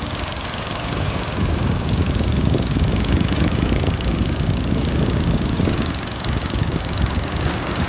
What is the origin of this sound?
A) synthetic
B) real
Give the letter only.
A